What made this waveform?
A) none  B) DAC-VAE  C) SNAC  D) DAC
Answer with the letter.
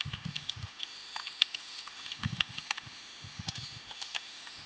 B